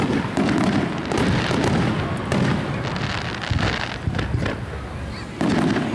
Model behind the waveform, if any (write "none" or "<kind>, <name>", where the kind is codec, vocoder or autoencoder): none